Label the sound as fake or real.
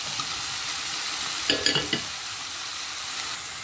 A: real